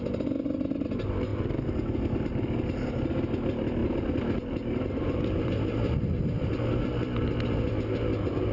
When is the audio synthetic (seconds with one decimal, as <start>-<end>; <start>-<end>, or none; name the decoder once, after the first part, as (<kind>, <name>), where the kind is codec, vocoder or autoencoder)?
3.8-6.5 (vocoder, BigVGAN v2)